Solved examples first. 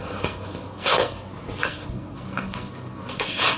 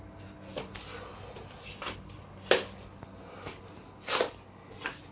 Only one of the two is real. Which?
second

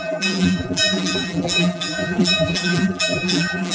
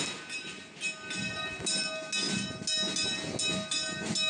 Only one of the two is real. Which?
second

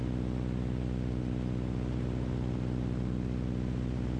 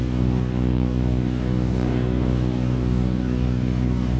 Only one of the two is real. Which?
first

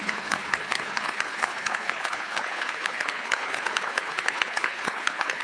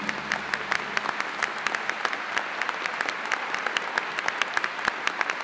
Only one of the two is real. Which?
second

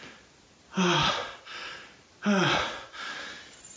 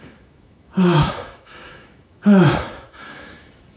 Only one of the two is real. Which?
first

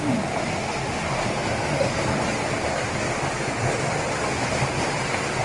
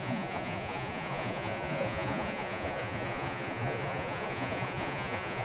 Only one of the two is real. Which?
first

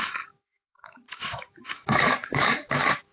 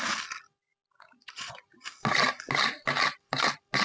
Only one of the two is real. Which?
second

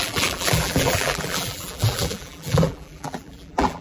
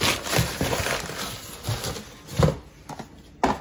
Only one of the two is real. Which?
second